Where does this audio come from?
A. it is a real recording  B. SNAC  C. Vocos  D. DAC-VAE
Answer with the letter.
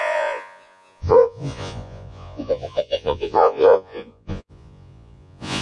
C